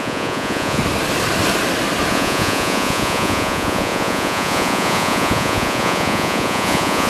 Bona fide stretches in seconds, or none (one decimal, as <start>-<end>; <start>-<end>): 0.8-2.1